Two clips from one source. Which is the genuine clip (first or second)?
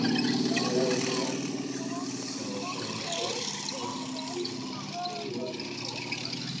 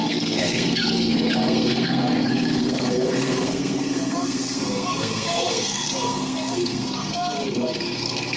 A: first